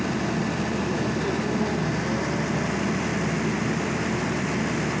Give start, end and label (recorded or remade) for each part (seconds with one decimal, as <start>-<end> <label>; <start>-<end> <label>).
0.0-5.0 recorded